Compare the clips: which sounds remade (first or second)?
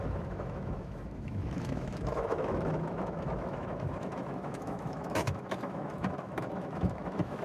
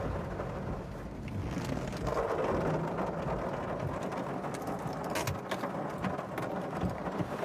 first